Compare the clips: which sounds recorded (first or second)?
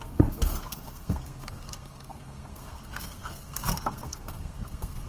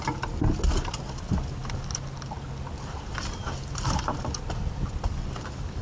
second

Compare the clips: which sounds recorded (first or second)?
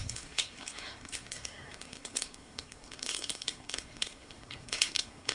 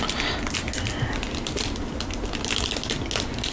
second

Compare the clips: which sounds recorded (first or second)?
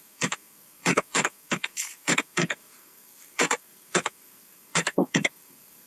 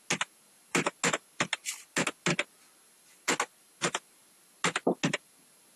second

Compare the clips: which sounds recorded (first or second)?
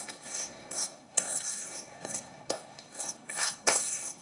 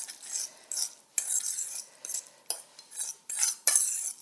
second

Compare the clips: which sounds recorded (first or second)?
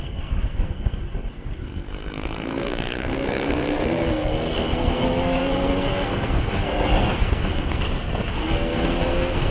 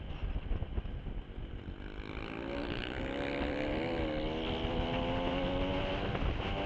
second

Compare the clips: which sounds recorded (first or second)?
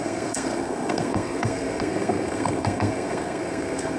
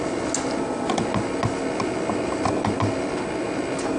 second